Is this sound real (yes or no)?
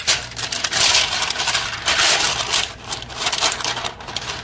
yes